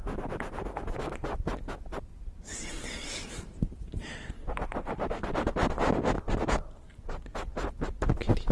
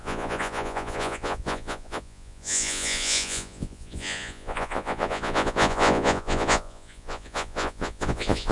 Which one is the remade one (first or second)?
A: second